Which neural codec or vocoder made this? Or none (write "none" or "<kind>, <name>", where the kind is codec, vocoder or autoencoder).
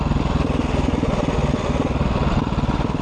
none